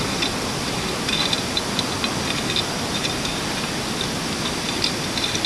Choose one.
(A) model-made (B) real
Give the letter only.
B